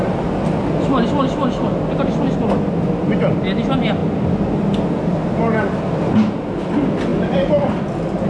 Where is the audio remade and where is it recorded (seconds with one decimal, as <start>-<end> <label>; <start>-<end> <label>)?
0.0-8.3 recorded